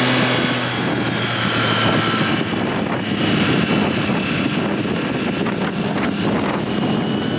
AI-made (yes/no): no